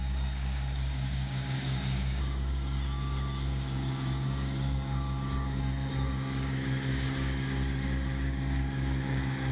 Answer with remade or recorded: remade